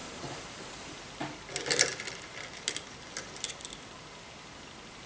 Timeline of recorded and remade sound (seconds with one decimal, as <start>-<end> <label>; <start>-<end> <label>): 0.0-1.0 remade; 1.0-5.1 recorded